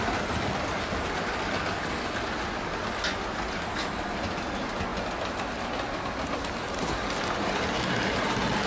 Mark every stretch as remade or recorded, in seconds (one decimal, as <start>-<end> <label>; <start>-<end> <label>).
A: 0.0-8.7 recorded